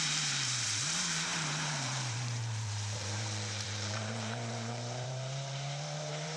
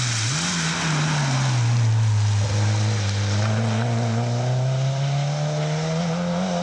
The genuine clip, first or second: second